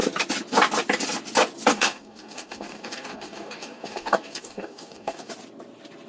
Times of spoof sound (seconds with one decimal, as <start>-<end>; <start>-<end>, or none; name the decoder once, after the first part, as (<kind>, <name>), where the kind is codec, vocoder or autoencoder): 1.7-5.3 (codec, DAC)